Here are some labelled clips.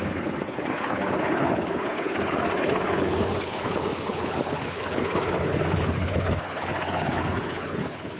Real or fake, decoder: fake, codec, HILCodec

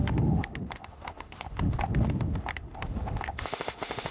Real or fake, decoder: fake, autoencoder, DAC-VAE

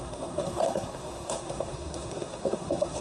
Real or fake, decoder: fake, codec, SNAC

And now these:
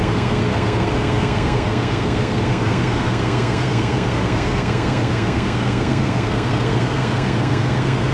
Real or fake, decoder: fake, codec, SNAC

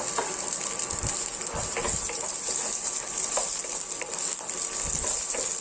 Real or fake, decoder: real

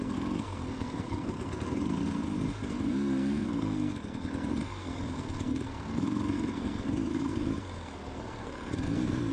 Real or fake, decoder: fake, codec, SNAC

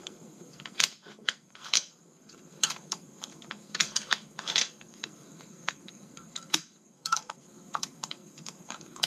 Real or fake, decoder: fake, codec, SNAC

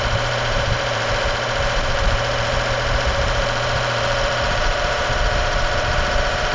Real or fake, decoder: fake, vocoder, BigVGAN v2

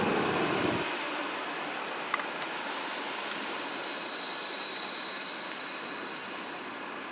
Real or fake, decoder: real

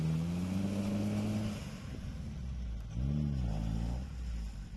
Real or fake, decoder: real